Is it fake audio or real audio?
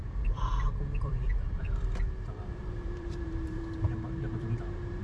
fake